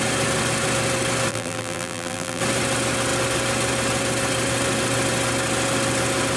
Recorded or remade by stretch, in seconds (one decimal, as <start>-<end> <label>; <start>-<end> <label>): 0.0-1.3 recorded; 1.3-2.4 remade; 2.4-6.4 recorded